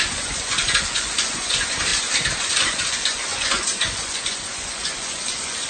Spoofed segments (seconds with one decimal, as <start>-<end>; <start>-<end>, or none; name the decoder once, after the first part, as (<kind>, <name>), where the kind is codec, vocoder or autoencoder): 0.0-1.9 (vocoder, Vocos); 2.4-5.7